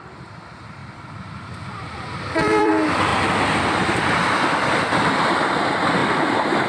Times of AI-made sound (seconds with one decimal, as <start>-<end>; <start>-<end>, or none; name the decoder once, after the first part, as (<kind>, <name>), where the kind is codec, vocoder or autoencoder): 0.8-2.7 (vocoder, BigVGAN v2)